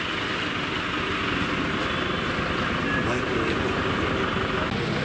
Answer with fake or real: real